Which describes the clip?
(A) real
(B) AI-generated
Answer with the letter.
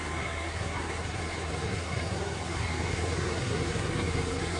B